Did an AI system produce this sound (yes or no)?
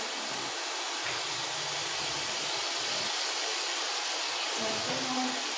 no